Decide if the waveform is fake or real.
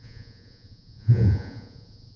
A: fake